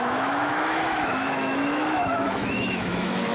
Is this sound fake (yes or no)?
yes